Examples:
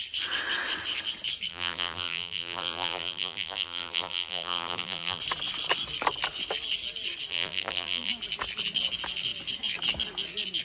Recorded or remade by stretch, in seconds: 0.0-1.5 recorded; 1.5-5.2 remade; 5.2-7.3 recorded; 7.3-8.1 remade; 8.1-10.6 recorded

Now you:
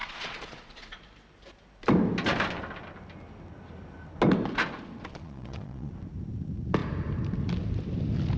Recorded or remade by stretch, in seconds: 0.0-1.0 remade; 1.0-5.1 recorded; 5.1-5.9 remade; 5.9-8.4 recorded